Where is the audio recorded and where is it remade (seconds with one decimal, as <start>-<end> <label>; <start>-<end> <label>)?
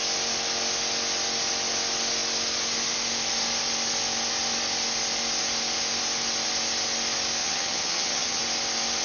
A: 0.0-7.4 recorded; 7.4-8.4 remade; 8.4-9.0 recorded